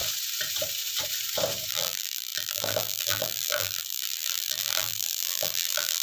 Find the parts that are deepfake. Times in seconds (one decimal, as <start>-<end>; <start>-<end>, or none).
1.7-6.0

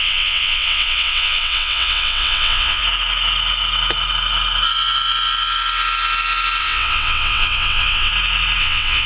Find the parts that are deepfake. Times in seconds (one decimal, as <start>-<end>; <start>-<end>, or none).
0.0-2.8; 6.6-8.1; 8.6-9.1

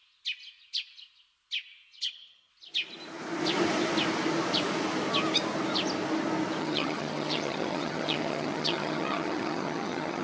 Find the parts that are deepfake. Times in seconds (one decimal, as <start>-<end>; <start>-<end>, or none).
2.0-2.5; 6.6-10.2

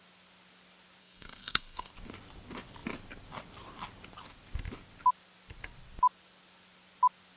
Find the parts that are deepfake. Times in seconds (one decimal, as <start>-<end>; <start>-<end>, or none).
1.0-1.9